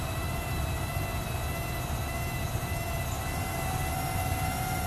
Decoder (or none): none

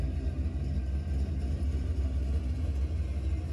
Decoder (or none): none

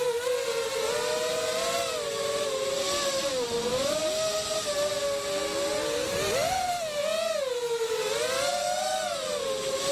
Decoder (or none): none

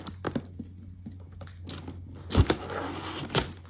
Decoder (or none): none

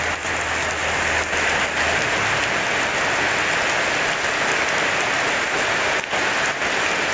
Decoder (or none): none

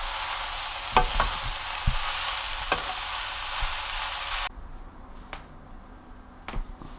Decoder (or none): none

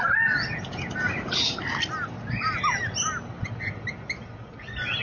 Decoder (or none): none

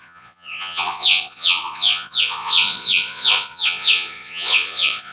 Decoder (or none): vocoder, Vocos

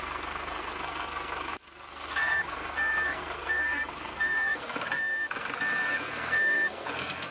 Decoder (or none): codec, SNAC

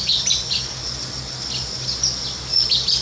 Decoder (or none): none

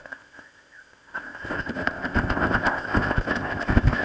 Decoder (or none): codec, ZipCodec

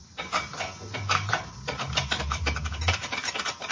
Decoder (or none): none